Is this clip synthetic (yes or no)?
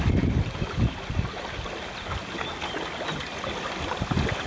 no